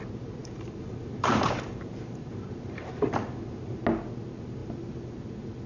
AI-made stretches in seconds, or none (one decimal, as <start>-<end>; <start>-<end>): 0.4-3.8; 4.6-5.2

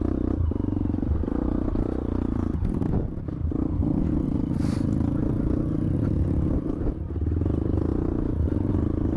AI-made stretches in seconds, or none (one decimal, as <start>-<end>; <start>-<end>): 0.0-5.2; 6.0-7.9; 8.7-9.2